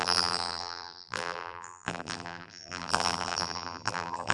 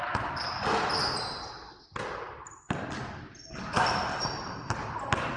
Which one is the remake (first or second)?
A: first